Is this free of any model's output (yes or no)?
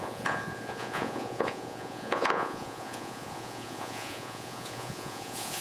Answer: no